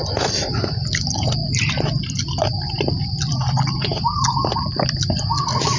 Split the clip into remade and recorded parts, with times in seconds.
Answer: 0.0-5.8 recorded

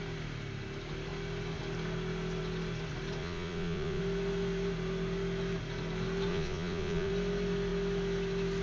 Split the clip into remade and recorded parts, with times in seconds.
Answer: 0.0-3.2 recorded; 3.2-4.0 remade; 4.0-6.3 recorded; 6.3-7.1 remade; 7.1-8.6 recorded

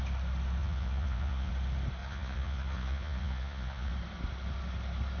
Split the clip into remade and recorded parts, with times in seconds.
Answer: 0.0-0.6 recorded; 0.6-1.5 remade; 1.5-2.0 recorded; 2.0-3.9 remade; 3.9-5.2 recorded